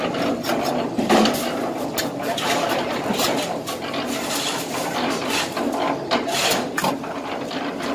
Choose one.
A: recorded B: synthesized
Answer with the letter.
A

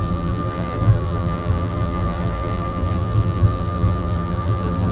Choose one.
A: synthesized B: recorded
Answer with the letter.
A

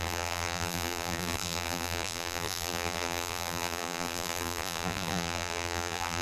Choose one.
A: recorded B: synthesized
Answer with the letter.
B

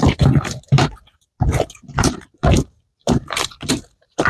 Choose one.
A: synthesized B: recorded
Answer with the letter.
A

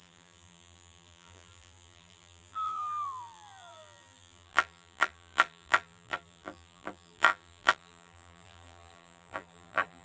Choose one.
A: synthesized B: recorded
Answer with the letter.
A